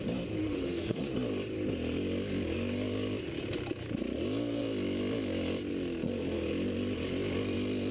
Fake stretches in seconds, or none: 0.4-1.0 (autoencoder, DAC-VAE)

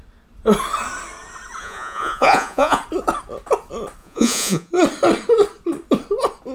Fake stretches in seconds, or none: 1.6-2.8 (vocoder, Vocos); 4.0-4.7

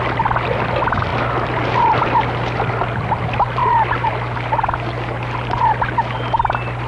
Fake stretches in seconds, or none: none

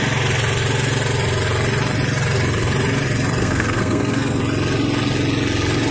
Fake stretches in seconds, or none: 3.4-4.4 (codec, SNAC)